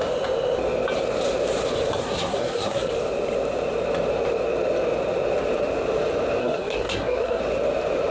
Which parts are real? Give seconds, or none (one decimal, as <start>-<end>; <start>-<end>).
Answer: 0.0-2.0; 2.9-6.4; 7.4-8.1

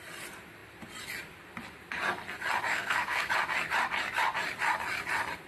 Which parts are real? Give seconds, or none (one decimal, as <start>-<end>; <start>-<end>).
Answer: 0.0-2.7; 3.3-5.5

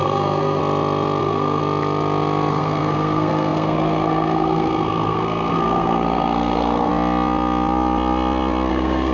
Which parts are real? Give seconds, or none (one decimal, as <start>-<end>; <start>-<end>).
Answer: 0.6-1.2; 1.6-2.5; 6.9-8.7

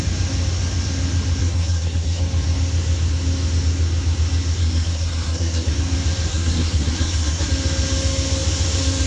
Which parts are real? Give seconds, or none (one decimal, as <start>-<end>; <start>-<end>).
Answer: 0.0-1.4; 2.2-4.6; 5.7-6.3; 7.5-9.1

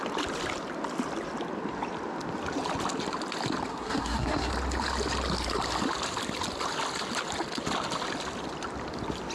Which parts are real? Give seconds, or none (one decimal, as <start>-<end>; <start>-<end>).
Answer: 0.0-3.7; 4.5-9.3

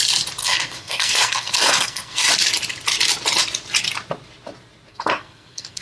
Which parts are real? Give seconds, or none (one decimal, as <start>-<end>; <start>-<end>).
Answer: 0.0-0.4; 2.3-4.9

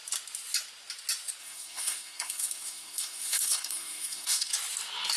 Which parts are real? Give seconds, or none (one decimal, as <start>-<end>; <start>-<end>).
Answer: 0.0-1.4; 4.5-5.2

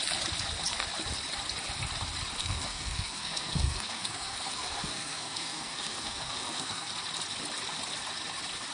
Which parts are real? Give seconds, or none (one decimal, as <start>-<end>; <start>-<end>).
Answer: 0.0-2.4; 6.9-8.7